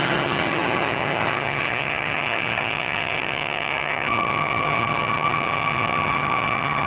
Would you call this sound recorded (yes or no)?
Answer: no